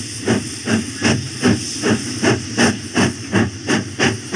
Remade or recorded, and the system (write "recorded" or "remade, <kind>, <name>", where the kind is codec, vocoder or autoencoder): recorded